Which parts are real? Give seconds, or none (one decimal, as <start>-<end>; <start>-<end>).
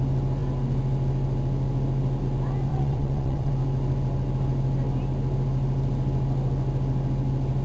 0.0-2.7; 3.5-7.6